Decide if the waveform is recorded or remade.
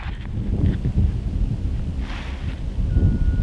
recorded